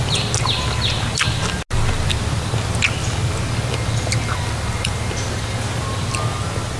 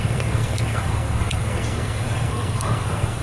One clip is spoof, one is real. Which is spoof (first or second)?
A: second